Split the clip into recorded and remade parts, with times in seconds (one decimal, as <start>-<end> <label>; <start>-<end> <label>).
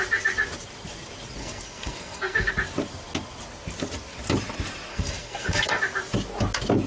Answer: 0.0-1.4 recorded; 1.4-2.5 remade; 2.5-4.9 recorded; 4.9-5.8 remade; 5.8-6.9 recorded